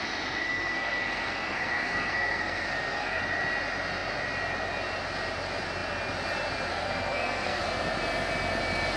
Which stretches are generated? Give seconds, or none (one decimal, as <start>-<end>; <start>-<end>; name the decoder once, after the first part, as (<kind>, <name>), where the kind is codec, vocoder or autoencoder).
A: 0.4-3.2 (codec, SNAC); 6.7-7.6